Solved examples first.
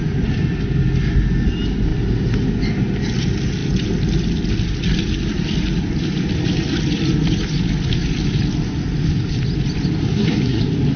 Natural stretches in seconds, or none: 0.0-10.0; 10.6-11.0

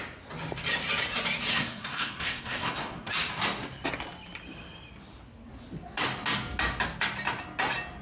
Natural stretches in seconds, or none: 0.0-1.5; 3.1-8.0